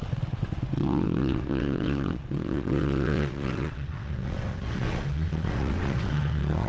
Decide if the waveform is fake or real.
fake